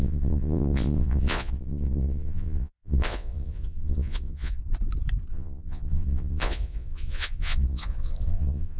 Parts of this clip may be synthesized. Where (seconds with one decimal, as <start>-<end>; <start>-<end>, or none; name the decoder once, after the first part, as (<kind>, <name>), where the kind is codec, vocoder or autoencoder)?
0.0-4.6 (vocoder, Vocos); 5.3-8.8